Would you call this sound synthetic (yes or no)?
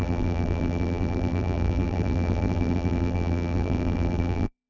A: yes